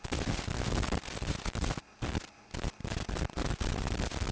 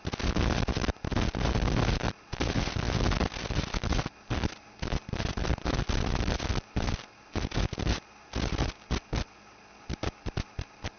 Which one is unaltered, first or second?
second